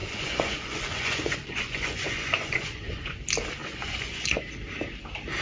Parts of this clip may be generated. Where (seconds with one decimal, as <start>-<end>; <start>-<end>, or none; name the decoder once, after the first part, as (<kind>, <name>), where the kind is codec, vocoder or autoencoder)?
0.0-3.2 (vocoder, Vocos); 3.6-4.4